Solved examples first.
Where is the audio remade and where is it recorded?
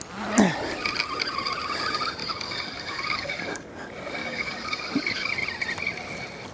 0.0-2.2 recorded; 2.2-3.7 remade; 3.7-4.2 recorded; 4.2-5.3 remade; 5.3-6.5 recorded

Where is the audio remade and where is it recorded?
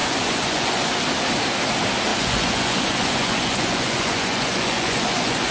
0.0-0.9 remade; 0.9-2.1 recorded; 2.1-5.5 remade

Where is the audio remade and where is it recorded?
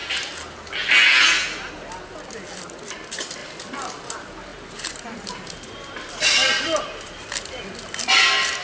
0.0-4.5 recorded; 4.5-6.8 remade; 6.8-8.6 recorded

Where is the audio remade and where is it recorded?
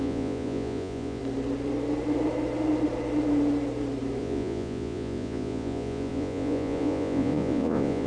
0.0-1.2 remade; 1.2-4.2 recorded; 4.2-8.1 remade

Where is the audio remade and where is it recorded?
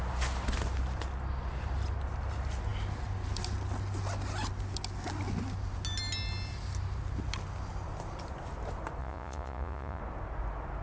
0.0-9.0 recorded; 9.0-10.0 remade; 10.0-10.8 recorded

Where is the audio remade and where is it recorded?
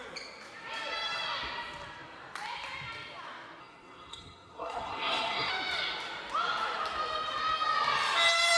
0.0-3.6 recorded; 3.6-5.5 remade; 5.5-8.6 recorded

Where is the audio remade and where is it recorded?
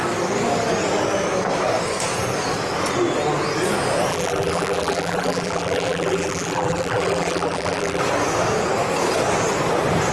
0.0-4.1 recorded; 4.1-8.0 remade; 8.0-10.1 recorded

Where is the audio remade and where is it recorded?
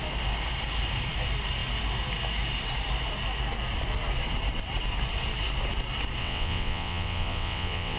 0.0-6.2 recorded; 6.2-8.0 remade